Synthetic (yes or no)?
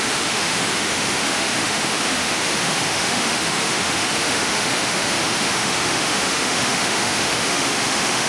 yes